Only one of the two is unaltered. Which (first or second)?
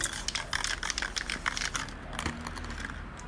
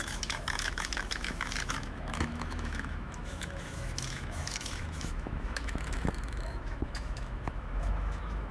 first